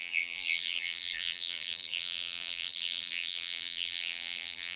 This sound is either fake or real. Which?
fake